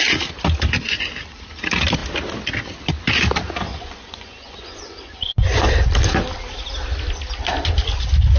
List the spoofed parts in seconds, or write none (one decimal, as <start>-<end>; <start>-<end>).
3.7-5.7